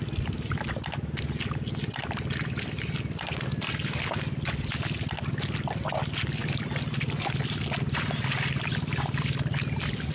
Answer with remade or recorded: recorded